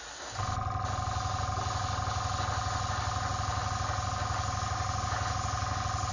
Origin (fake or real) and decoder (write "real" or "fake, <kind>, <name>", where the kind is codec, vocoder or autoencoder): real